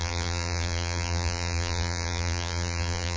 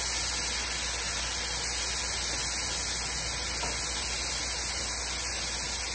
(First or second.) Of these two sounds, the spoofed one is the first